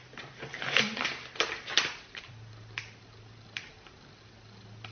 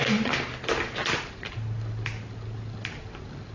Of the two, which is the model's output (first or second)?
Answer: first